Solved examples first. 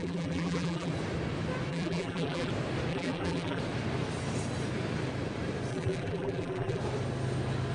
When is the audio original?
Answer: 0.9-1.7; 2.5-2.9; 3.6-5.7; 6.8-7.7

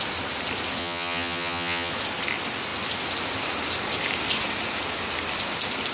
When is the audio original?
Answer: 0.0-0.8; 1.9-5.9

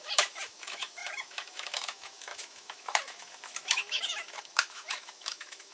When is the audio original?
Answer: none

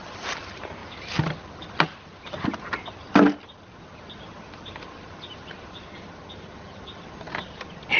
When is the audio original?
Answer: 0.0-8.0

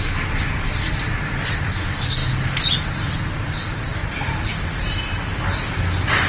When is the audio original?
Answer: 0.0-6.3